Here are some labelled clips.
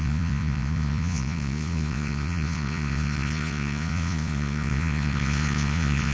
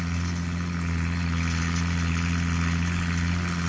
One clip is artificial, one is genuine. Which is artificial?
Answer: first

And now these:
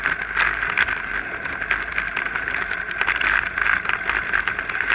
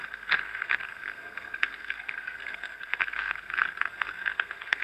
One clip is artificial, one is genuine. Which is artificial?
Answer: second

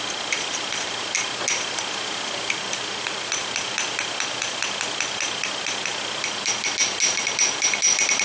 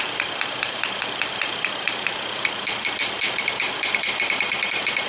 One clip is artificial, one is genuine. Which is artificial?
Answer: second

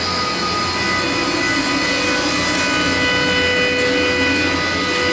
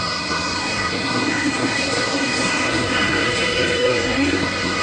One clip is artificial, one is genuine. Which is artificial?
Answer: second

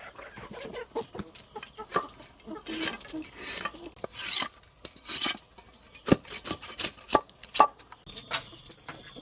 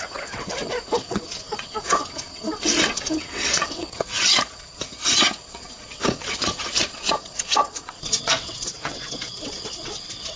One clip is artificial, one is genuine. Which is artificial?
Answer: second